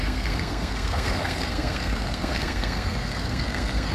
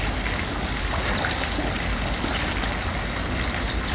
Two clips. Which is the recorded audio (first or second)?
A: second